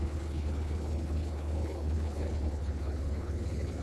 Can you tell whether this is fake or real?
fake